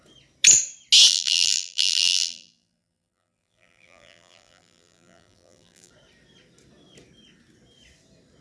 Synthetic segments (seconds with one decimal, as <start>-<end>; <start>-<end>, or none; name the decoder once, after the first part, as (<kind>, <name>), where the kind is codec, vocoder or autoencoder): 1.1-5.9 (vocoder, BigVGAN v2)